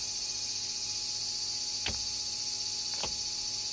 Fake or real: real